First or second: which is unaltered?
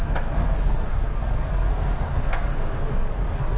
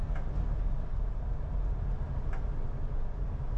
second